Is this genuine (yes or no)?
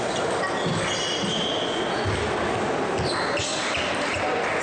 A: yes